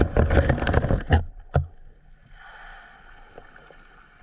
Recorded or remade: recorded